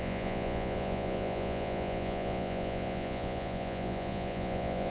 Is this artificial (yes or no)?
yes